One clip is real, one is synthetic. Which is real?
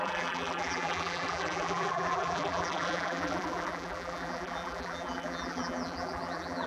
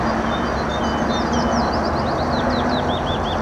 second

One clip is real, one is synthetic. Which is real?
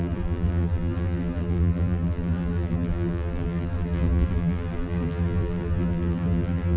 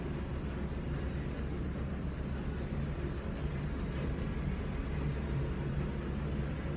second